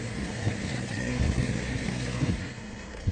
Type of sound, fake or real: fake